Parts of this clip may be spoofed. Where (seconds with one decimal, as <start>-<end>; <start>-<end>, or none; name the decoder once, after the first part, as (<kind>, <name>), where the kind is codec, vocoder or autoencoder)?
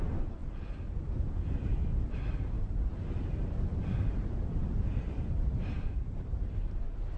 0.0-0.4 (vocoder, BigVGAN v2); 2.5-4.6; 5.2-7.2